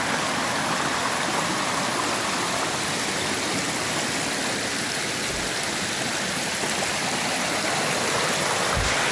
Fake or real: real